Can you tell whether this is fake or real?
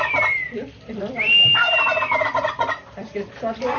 fake